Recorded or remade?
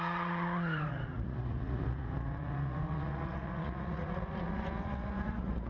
remade